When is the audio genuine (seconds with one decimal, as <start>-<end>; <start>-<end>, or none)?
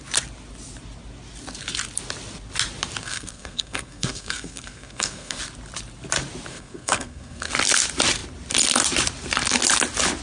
0.0-3.0; 5.4-6.5; 7.5-10.2